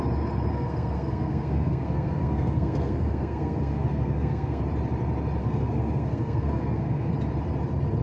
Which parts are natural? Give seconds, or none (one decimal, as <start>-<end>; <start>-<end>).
0.0-0.5; 4.6-5.4; 7.1-8.0